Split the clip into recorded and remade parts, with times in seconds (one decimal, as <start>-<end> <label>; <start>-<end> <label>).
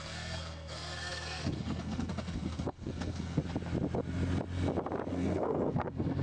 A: 0.0-3.4 remade; 3.4-5.1 recorded; 5.1-6.2 remade